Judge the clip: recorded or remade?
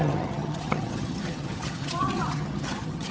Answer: remade